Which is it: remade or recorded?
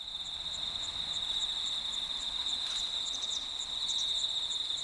recorded